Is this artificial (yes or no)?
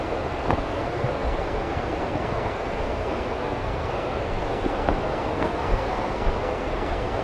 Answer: yes